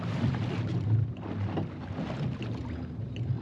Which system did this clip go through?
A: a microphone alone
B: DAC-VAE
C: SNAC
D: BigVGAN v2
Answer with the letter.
A